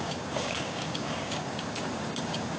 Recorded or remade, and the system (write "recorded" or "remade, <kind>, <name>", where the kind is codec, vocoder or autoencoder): remade, codec, DAC